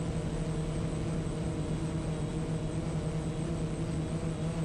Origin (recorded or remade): recorded